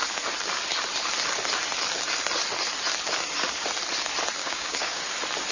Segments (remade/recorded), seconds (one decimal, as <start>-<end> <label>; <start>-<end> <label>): 0.0-4.4 recorded; 4.4-5.0 remade; 5.0-5.5 recorded